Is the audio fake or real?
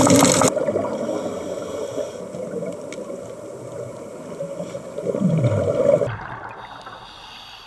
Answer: real